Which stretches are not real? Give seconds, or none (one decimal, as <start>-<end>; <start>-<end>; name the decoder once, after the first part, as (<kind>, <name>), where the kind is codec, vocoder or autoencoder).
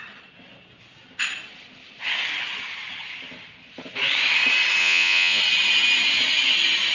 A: 4.8-5.4 (vocoder, Vocos)